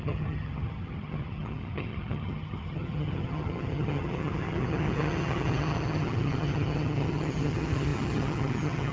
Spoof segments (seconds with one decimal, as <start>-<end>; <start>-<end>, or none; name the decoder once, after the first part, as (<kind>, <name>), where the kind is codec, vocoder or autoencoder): 0.0-8.9 (vocoder, HiFi-GAN)